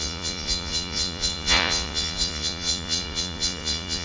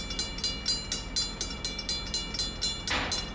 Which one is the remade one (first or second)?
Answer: first